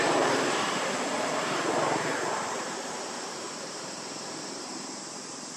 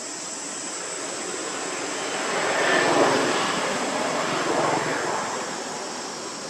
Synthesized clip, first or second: first